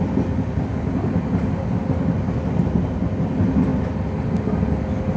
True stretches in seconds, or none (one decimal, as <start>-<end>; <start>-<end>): 0.0-5.2